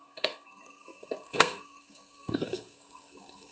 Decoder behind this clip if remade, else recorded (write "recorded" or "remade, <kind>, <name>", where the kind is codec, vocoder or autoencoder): remade, codec, SNAC